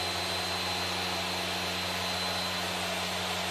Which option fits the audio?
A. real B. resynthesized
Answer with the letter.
A